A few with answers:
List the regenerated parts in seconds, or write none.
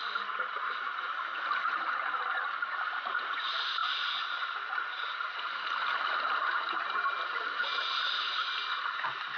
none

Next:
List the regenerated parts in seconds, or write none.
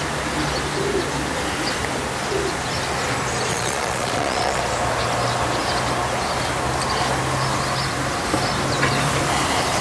3.5-4.6 (vocoder, Vocos)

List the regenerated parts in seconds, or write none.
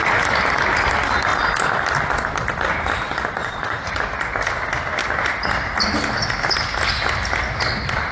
3.4-4.0 (vocoder, Vocos)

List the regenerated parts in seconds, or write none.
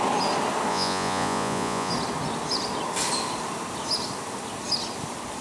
0.7-1.9 (vocoder, Vocos)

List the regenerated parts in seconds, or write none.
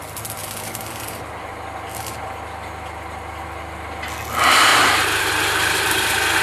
0.4-1.3 (vocoder, BigVGAN v2); 4.7-5.3